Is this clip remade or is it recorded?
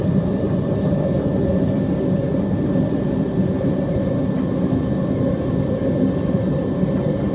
recorded